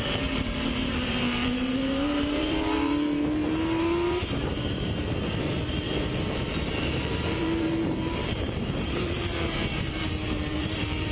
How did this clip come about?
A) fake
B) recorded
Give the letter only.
A